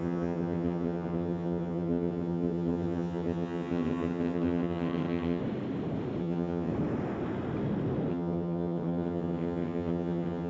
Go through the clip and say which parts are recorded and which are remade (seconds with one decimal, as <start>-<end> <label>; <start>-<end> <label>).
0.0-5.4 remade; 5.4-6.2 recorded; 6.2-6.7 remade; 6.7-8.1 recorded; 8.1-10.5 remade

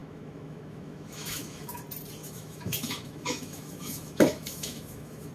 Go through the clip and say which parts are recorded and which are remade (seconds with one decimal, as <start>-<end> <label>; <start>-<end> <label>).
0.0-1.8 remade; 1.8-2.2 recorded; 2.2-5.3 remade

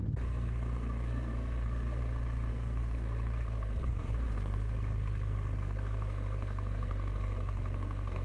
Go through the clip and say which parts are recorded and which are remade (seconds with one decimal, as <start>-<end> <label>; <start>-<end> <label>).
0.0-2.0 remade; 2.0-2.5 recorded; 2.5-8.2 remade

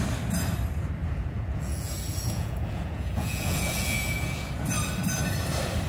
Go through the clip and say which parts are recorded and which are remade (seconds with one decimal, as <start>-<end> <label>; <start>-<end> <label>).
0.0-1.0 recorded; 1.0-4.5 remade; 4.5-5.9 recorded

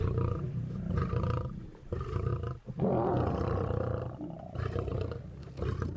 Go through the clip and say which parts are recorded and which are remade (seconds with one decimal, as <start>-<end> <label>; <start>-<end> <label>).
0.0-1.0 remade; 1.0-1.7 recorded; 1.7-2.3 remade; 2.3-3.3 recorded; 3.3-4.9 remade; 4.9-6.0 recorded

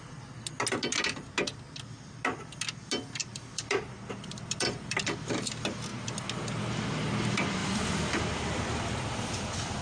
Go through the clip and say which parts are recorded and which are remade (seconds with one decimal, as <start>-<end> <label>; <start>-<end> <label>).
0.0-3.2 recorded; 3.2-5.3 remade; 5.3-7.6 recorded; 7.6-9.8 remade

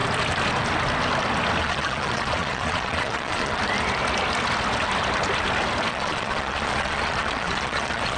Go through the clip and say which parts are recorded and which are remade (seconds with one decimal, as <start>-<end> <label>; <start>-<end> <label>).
0.0-1.6 recorded; 1.6-3.6 remade; 3.6-5.9 recorded; 5.9-8.2 remade

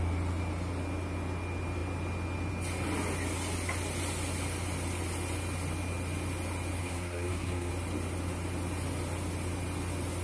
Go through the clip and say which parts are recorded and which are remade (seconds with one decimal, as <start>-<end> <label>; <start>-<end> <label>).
0.0-6.8 recorded; 6.8-7.7 remade; 7.7-10.2 recorded